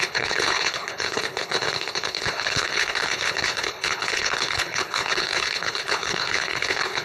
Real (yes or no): no